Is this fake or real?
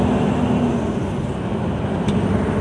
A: real